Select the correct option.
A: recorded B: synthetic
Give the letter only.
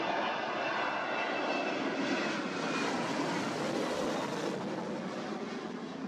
A